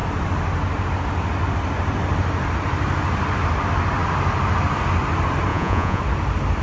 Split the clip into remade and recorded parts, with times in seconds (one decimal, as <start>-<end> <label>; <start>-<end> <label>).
0.0-5.5 recorded; 5.5-6.0 remade; 6.0-6.6 recorded